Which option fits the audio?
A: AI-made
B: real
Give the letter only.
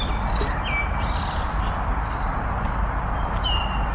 B